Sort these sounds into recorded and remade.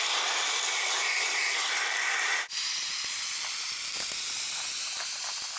recorded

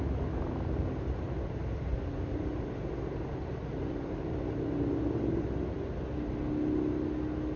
recorded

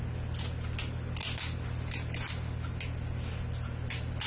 recorded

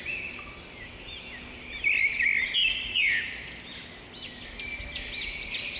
recorded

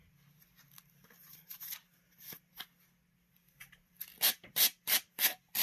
recorded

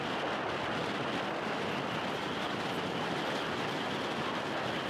recorded